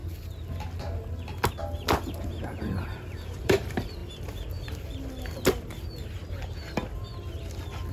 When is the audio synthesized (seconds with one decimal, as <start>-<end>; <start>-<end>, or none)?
2.0-4.0